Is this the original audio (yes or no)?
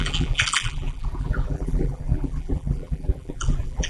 no